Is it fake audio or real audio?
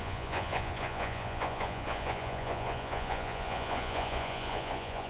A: fake